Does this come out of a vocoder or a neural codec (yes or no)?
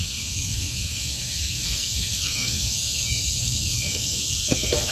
yes